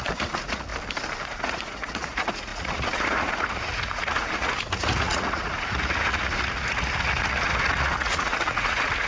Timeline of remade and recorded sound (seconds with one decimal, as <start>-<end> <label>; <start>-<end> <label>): 0.0-0.7 remade; 0.7-1.2 recorded; 1.2-9.1 remade